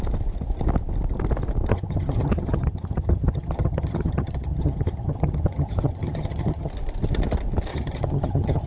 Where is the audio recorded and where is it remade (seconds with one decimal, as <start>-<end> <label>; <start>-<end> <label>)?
0.0-1.7 recorded; 1.7-6.7 remade; 6.7-7.7 recorded; 7.7-8.7 remade